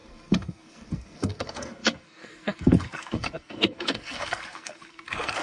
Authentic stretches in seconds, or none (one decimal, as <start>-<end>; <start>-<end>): none

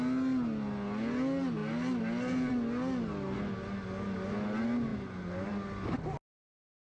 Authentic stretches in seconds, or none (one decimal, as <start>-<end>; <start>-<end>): 0.0-7.0

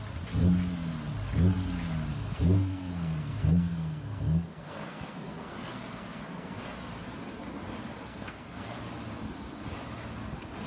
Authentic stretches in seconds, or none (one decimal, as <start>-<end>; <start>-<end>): 0.0-2.1; 6.6-7.9; 8.8-10.7

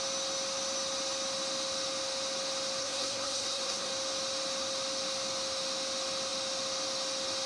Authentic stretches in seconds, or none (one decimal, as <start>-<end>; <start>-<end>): 0.0-2.8; 3.9-7.5

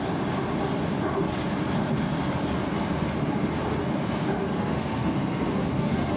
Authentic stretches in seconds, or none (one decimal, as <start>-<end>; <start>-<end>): 0.0-4.4

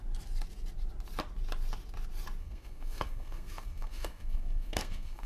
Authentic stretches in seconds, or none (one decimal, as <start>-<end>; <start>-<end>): 0.0-2.4

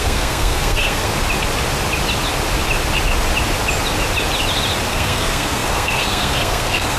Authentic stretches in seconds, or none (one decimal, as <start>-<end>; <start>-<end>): 1.1-4.9

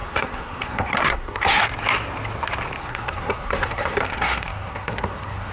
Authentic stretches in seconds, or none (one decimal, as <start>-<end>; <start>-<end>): 1.6-2.8